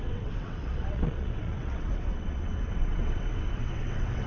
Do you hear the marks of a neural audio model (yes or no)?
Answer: yes